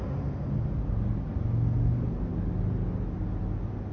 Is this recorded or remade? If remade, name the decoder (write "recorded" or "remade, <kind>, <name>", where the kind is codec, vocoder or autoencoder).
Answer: recorded